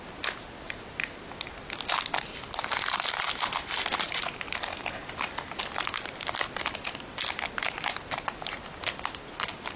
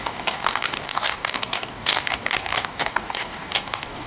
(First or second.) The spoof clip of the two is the second